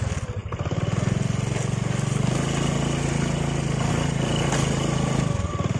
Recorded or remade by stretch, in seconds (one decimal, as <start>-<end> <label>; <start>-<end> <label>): 0.0-5.8 recorded